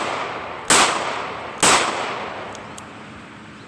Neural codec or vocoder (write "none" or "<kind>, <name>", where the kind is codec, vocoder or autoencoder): none